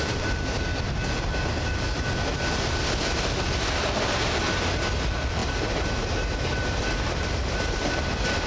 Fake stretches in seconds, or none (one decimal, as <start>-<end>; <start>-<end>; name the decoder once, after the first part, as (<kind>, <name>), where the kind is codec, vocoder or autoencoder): 0.0-0.7 (vocoder, BigVGAN v2); 4.9-8.5